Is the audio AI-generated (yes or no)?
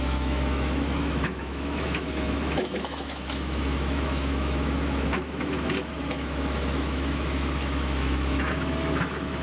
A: yes